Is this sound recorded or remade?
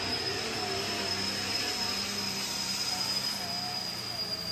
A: recorded